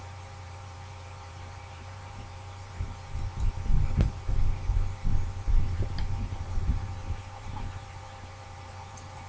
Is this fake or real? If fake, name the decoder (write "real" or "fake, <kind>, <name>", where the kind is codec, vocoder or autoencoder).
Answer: fake, vocoder, BigVGAN v2